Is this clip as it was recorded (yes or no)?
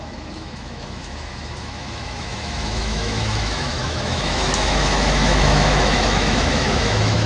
no